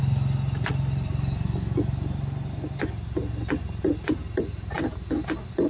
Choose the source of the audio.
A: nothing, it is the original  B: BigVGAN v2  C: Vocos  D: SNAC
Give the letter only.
A